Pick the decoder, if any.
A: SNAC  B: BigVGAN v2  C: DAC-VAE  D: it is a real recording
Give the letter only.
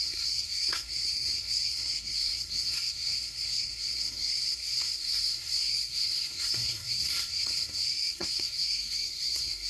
A